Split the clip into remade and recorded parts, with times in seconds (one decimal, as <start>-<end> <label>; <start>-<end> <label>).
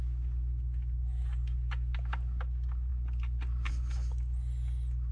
0.0-2.9 recorded; 2.9-3.7 remade; 3.7-5.1 recorded